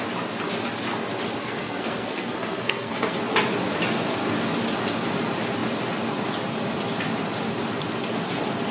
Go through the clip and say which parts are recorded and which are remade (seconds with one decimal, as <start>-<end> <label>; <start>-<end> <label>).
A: 0.0-1.4 recorded; 1.4-3.2 remade; 3.2-8.7 recorded